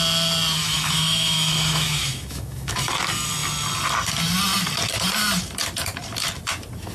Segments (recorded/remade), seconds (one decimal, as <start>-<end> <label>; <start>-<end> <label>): 0.0-0.6 recorded; 0.6-2.9 remade; 2.9-6.9 recorded

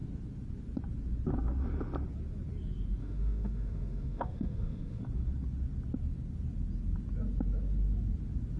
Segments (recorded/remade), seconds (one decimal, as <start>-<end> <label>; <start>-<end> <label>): 0.0-3.0 recorded; 3.0-5.0 remade; 5.0-8.6 recorded

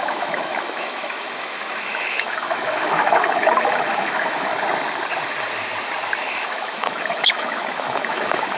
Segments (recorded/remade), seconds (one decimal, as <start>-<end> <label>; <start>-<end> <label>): 0.0-4.5 remade; 4.5-6.2 recorded; 6.2-8.6 remade

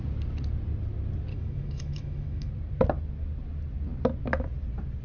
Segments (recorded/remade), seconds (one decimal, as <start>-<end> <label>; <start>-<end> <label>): 0.0-1.3 recorded; 1.3-2.5 remade; 2.5-5.0 recorded

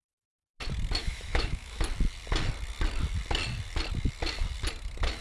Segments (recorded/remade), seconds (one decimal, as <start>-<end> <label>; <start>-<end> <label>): 0.0-1.0 recorded; 1.0-1.8 remade; 1.8-5.2 recorded

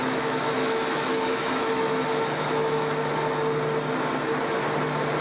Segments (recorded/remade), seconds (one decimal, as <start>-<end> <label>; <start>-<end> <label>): 0.0-3.1 remade; 3.1-5.2 recorded